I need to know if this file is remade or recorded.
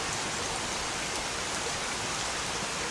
recorded